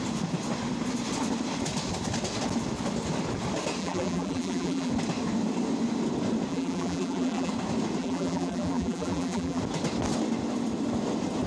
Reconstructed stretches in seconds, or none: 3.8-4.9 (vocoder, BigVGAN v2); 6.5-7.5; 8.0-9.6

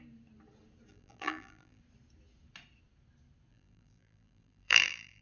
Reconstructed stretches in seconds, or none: 0.9-1.8 (vocoder, BigVGAN v2); 3.5-5.2

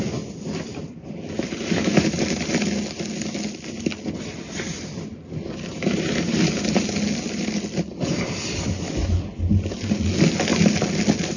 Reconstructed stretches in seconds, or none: 0.7-2.5 (vocoder, BigVGAN v2); 5.7-7.0

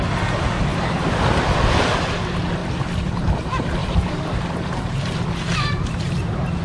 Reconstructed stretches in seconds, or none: 2.6-3.2 (vocoder, BigVGAN v2); 3.8-6.6

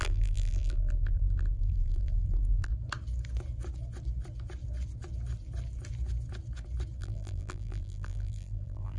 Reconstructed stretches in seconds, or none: 0.0-2.7 (vocoder, BigVGAN v2); 7.0-9.0